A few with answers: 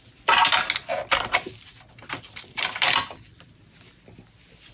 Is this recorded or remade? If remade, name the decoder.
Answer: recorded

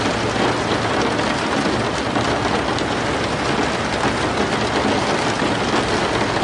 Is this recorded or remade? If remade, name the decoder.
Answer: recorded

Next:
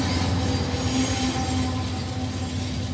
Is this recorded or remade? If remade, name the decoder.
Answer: recorded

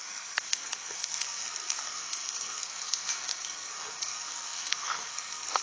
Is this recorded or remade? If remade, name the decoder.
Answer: remade, codec, SNAC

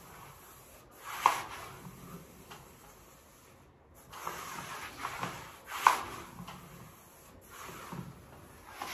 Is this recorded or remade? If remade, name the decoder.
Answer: recorded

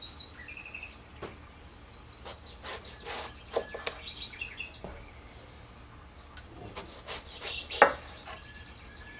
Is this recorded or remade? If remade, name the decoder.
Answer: recorded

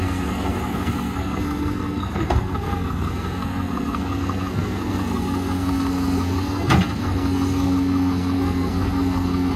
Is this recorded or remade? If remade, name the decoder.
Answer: remade, codec, SNAC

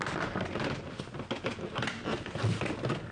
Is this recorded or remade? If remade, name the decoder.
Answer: recorded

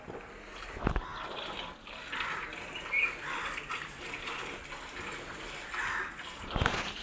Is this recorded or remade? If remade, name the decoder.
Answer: recorded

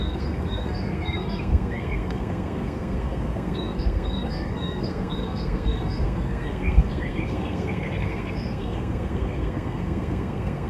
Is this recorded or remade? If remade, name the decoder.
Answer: remade, codec, SNAC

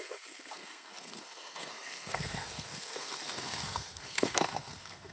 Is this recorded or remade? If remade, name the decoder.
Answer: remade, codec, SNAC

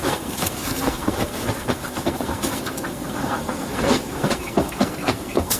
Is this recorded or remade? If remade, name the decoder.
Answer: remade, codec, SNAC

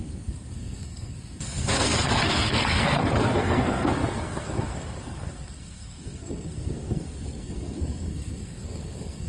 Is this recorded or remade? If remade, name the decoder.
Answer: remade, codec, SNAC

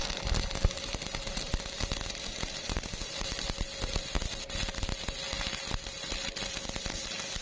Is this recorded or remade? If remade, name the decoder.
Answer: recorded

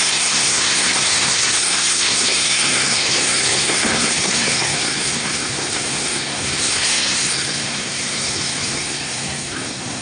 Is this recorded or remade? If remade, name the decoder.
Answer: remade, codec, SNAC